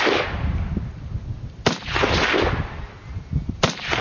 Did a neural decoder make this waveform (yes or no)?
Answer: no